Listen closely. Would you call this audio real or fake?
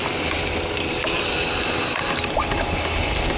real